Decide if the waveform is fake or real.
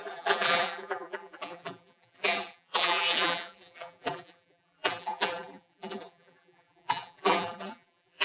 fake